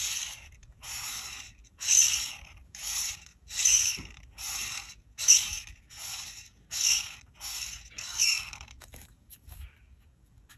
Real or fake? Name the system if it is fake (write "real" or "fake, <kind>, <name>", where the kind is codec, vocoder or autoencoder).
fake, codec, DAC